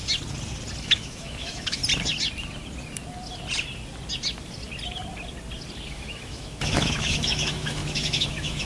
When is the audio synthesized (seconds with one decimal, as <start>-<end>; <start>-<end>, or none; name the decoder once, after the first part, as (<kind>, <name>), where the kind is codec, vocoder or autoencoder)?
0.8-1.8 (autoencoder, DAC-VAE); 5.9-8.7